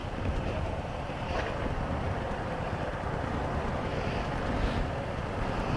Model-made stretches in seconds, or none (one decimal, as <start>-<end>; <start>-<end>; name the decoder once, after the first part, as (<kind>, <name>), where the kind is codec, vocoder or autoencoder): 0.0-1.4 (vocoder, BigVGAN v2); 3.9-4.5